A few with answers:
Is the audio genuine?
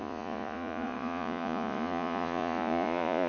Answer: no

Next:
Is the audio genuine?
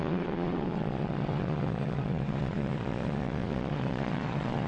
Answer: no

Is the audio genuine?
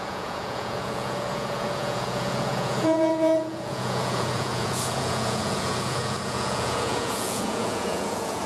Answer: no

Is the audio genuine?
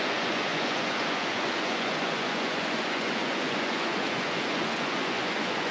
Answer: no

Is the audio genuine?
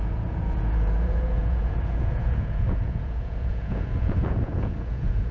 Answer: no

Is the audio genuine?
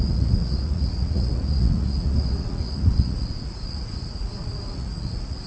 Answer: no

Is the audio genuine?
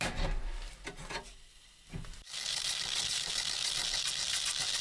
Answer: yes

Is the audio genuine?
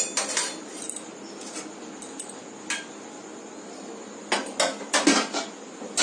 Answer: yes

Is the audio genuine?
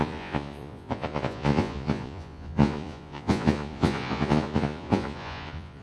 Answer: no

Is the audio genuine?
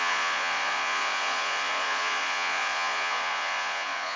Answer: no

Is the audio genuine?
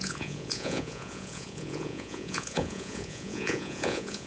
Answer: no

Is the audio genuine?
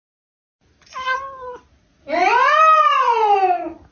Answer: yes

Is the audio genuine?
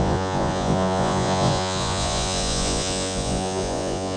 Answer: no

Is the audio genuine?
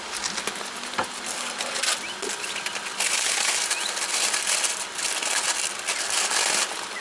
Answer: yes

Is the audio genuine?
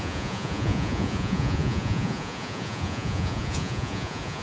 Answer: no